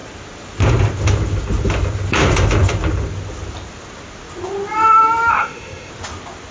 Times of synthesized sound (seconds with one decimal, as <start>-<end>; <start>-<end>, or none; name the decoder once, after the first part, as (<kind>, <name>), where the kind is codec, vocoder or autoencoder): 5.3-5.9 (codec, SNAC)